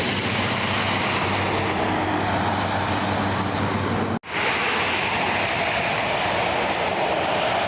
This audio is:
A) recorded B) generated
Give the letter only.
A